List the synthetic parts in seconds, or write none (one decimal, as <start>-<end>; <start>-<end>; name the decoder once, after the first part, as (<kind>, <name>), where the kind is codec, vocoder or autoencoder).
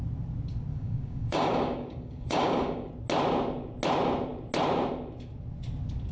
0.7-2.9 (codec, DAC)